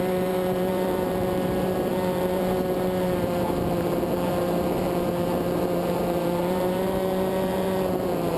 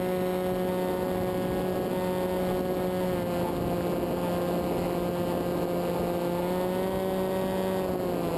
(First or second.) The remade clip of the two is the first